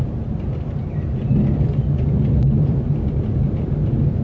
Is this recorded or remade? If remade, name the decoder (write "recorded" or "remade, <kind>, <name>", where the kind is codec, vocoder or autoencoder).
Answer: remade, vocoder, BigVGAN v2